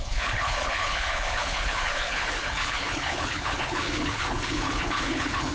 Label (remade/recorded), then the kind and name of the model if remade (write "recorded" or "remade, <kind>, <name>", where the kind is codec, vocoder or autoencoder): remade, codec, HILCodec